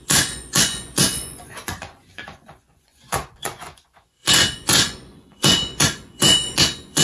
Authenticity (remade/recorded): remade